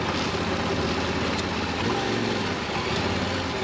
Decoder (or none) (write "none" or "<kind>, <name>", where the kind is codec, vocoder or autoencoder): none